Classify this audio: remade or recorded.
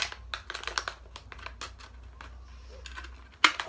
recorded